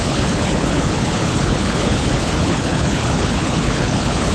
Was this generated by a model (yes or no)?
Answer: yes